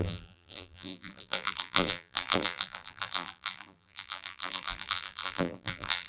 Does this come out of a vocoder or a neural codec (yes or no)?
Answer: yes